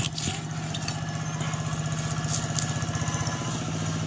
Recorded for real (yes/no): yes